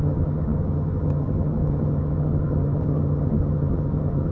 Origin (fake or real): fake